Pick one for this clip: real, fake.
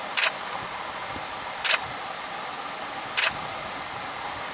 real